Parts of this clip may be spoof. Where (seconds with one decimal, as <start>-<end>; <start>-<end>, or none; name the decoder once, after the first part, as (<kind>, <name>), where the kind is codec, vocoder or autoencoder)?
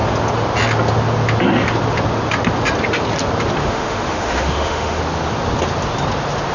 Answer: 3.6-5.0 (autoencoder, DAC-VAE)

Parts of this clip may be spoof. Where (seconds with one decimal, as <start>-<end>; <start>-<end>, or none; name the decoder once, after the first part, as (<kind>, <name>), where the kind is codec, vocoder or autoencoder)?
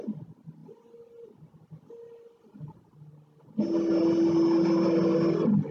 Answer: none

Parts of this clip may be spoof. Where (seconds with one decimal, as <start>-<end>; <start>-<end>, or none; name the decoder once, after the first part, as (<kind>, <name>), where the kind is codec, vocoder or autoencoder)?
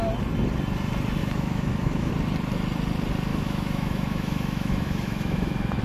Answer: 1.2-2.1 (autoencoder, DAC-VAE); 3.3-5.8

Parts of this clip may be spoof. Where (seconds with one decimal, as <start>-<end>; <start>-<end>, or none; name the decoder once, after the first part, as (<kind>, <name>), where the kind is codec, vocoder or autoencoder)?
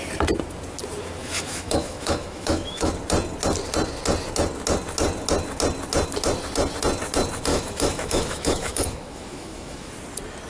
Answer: 1.2-2.9 (autoencoder, DAC-VAE); 7.5-9.9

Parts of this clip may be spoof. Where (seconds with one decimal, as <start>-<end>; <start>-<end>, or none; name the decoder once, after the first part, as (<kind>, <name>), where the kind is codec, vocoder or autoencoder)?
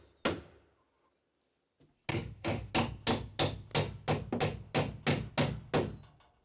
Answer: 2.1-2.7 (autoencoder, DAC-VAE)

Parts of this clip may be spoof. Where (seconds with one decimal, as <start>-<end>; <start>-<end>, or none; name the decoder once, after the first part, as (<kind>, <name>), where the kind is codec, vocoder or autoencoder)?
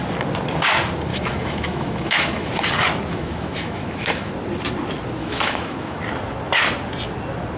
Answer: 1.1-2.5 (autoencoder, DAC-VAE); 3.1-4.3; 5.2-6.0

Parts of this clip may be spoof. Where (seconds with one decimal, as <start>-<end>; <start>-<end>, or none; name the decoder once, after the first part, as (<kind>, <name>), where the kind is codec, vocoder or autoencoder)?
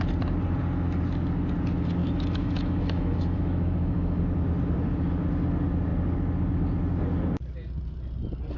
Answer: 2.0-4.2 (autoencoder, DAC-VAE)